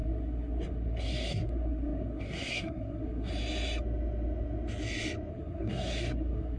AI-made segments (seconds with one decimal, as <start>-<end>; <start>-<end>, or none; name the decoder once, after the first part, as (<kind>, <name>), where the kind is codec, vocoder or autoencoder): 0.0-3.3 (codec, SNAC); 5.3-6.6